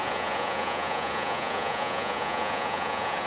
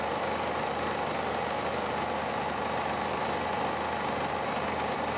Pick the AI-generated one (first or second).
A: first